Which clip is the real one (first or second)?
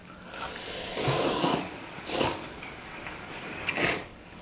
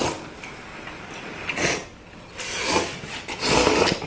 second